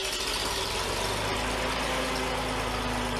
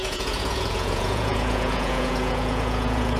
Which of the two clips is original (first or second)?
first